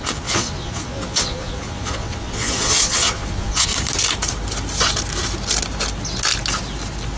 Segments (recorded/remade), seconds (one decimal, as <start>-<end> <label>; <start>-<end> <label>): 0.0-3.7 remade; 3.7-7.2 recorded